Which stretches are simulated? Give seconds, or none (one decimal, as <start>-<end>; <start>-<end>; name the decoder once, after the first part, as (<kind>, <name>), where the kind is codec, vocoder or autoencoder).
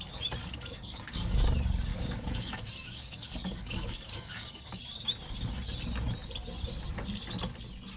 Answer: 0.4-1.4 (codec, DAC); 1.9-4.8